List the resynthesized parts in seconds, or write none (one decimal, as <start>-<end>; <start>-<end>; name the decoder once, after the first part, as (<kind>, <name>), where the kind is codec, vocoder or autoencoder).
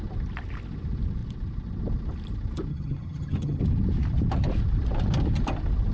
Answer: 2.7-3.6 (vocoder, HiFi-GAN)